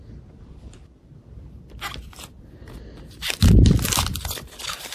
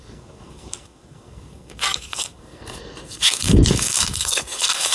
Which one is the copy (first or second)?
second